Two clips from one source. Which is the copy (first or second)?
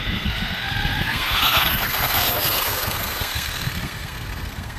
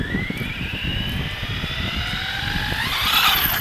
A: first